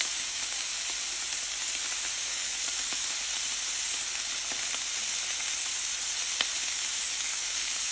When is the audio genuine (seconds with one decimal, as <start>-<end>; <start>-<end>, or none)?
0.7-2.2; 3.2-7.2